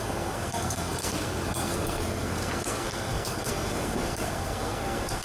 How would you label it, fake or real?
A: fake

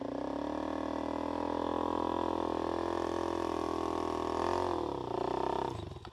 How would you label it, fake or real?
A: real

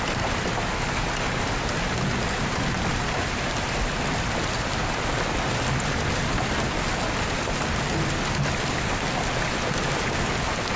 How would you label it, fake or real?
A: real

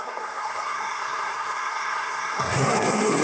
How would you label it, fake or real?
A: fake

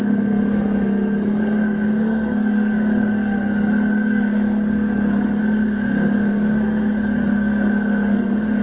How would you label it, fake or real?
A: fake